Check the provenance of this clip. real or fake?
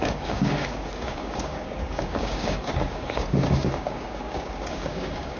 fake